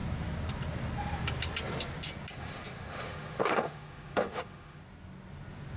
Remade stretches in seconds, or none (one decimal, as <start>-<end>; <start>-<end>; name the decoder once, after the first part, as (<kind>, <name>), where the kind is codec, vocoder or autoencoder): 2.3-4.8 (autoencoder, DAC-VAE)